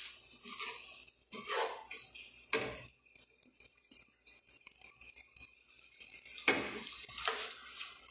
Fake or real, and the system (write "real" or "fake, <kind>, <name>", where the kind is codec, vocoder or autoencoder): real